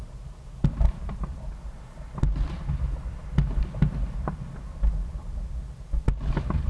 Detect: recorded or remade recorded